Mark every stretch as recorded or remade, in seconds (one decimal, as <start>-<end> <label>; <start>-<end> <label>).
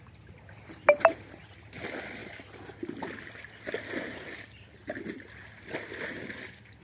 0.0-6.8 recorded